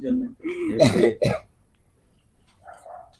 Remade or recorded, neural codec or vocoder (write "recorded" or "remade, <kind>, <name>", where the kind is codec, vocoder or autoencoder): remade, vocoder, Vocos